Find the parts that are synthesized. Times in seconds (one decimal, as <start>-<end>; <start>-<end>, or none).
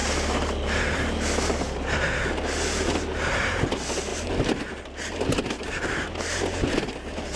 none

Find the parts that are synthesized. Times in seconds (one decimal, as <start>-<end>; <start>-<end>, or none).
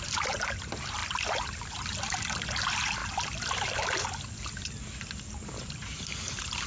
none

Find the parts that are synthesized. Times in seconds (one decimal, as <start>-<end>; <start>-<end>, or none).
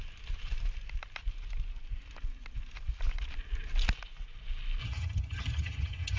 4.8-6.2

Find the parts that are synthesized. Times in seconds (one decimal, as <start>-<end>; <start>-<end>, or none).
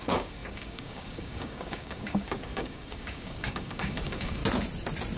0.0-4.4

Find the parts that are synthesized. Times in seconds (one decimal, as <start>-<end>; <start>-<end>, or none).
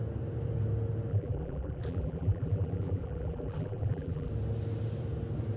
1.1-4.3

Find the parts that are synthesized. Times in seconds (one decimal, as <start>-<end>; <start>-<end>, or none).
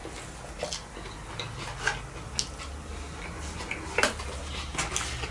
none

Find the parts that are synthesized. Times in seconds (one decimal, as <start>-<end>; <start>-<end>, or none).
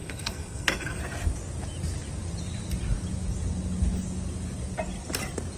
0.0-1.0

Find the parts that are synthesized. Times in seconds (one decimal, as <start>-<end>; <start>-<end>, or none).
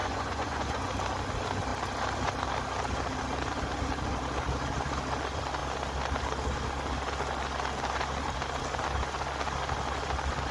0.0-0.9